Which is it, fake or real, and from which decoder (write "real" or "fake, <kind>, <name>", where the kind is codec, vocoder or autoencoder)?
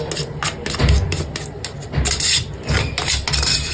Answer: real